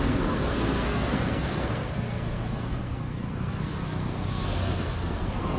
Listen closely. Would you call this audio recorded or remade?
remade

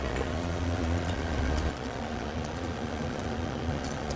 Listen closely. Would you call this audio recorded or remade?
remade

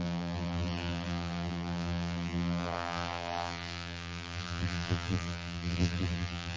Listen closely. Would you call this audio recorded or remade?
remade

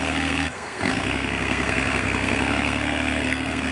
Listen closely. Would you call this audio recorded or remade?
remade